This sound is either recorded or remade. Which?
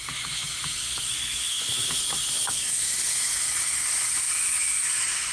remade